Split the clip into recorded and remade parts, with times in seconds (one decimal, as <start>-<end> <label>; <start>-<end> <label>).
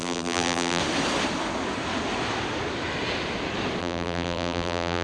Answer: 0.0-0.8 remade; 0.8-3.8 recorded; 3.8-5.0 remade